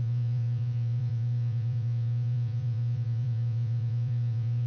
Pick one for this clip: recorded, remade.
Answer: remade